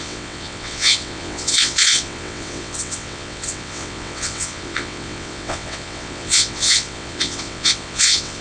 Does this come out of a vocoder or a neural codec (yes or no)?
yes